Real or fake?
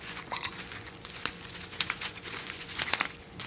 fake